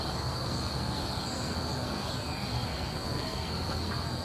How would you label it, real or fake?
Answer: fake